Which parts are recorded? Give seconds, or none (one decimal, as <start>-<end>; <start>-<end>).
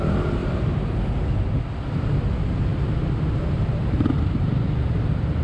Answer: 0.0-0.4; 1.1-5.4